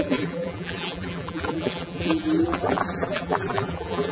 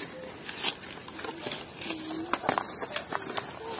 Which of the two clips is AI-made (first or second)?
first